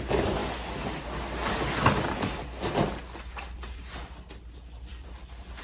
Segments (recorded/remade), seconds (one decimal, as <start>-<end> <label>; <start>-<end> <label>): 0.0-5.6 recorded